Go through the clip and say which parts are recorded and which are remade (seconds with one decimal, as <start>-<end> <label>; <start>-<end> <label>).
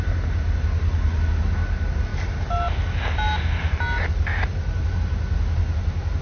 0.0-6.2 recorded